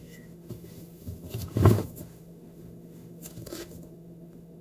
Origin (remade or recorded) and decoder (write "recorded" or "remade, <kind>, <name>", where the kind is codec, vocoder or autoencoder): remade, autoencoder, DAC-VAE